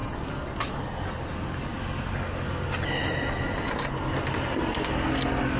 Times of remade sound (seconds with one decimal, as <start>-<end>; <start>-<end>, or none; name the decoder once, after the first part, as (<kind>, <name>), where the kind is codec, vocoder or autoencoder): none